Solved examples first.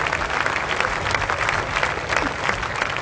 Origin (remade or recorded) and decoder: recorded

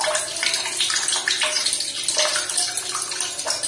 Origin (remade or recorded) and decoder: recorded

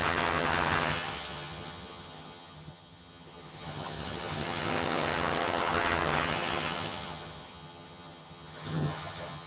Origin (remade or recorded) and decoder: remade, vocoder, HiFi-GAN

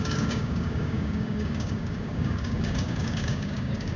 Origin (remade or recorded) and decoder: remade, codec, DAC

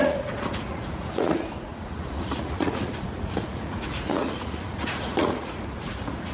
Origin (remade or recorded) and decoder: remade, vocoder, Vocos